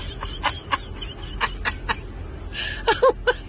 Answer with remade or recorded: recorded